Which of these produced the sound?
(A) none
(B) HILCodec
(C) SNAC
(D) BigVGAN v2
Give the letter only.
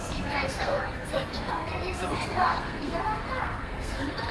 C